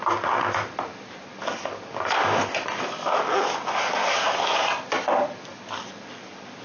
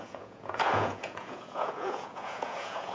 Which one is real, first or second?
first